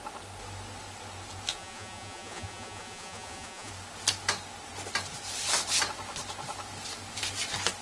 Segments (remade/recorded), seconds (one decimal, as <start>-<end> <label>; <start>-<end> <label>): 0.0-1.5 recorded; 1.5-3.7 remade; 3.7-7.8 recorded